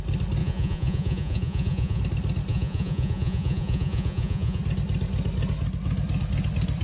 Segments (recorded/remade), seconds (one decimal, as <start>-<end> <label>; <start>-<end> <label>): 0.0-0.4 recorded; 0.4-2.0 remade; 2.0-2.5 recorded; 2.5-4.6 remade; 4.6-6.8 recorded